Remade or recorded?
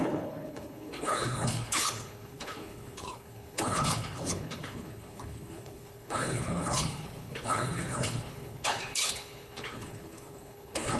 remade